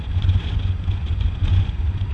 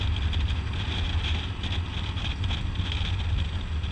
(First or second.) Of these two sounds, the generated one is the first